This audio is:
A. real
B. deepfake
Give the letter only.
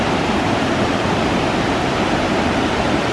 B